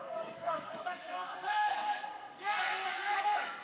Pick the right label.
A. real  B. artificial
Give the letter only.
B